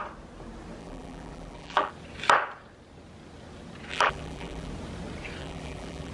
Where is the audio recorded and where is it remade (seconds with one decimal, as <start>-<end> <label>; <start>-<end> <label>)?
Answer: 0.0-0.8 recorded; 0.8-1.9 remade; 1.9-3.9 recorded; 3.9-4.7 remade; 4.7-5.4 recorded; 5.4-6.1 remade